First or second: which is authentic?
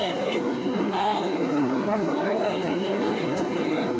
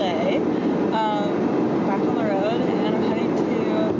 second